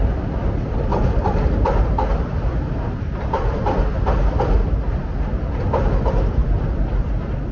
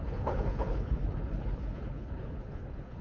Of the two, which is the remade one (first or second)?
second